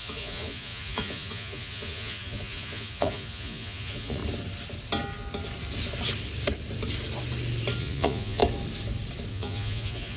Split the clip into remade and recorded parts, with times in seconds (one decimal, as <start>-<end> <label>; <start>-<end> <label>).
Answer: 0.0-4.2 remade; 4.2-7.8 recorded; 7.8-8.4 remade; 8.4-9.3 recorded; 9.3-10.2 remade